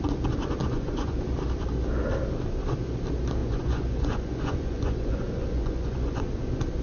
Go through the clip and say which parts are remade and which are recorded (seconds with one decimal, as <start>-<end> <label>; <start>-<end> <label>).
0.0-0.6 recorded; 0.6-1.2 remade; 1.2-3.4 recorded; 3.4-6.2 remade; 6.2-6.8 recorded